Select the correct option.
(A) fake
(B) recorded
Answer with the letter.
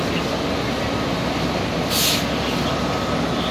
B